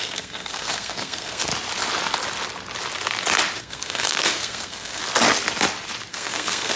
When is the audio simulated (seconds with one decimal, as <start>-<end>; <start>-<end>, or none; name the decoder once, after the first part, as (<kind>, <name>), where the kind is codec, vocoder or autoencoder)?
0.0-1.5 (codec, SNAC); 3.6-5.0; 6.1-6.8